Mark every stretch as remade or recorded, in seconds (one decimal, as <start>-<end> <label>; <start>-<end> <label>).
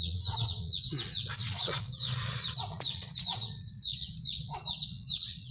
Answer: 0.0-5.5 remade